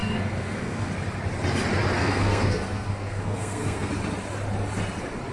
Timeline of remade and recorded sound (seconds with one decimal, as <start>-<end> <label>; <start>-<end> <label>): 0.0-0.9 remade; 0.9-2.0 recorded; 2.0-3.9 remade; 3.9-5.3 recorded